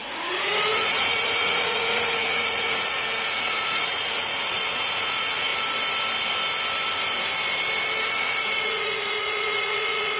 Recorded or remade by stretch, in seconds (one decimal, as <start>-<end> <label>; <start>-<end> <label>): 0.0-5.5 remade; 5.5-8.1 recorded; 8.1-10.2 remade